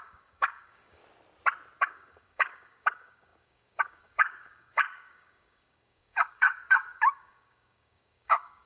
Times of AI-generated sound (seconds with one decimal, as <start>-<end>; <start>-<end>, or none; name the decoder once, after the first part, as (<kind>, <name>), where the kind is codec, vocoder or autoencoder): 0.0-1.0 (codec, DAC); 1.8-8.7